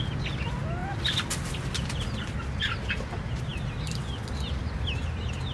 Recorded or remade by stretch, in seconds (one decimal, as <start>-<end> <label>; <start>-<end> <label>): 0.0-5.5 recorded